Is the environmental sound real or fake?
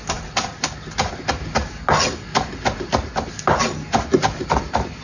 real